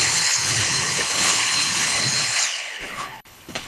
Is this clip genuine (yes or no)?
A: no